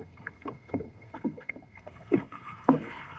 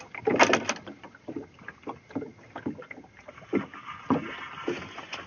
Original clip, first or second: second